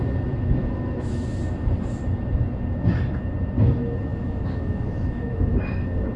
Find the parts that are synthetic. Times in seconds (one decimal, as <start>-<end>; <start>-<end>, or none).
0.6-1.4; 4.1-5.6